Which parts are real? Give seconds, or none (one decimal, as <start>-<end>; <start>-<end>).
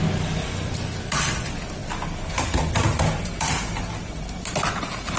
0.0-5.2